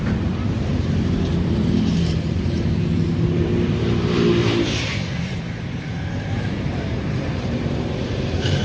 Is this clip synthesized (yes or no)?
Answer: yes